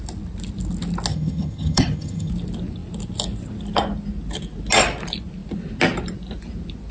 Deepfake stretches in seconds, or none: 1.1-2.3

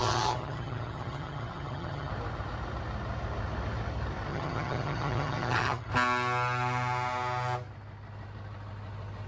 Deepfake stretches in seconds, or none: 0.0-2.1; 4.3-5.9

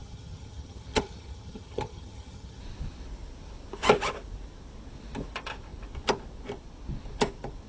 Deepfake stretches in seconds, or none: 0.0-2.6

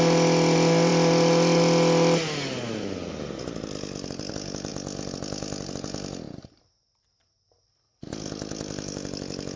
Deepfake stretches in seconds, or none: none